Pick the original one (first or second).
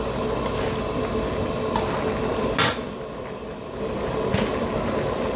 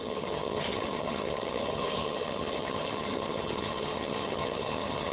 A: first